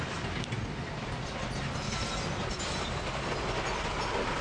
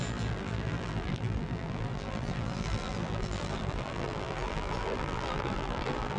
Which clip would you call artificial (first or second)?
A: second